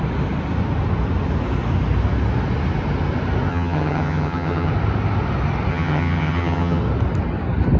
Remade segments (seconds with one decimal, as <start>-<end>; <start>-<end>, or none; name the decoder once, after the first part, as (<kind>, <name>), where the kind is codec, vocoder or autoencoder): 3.5-4.7 (vocoder, HiFi-GAN); 5.7-6.8